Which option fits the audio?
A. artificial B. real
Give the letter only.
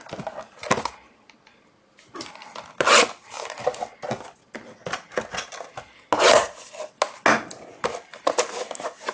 B